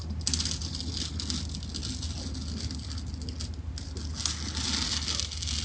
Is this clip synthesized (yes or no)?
no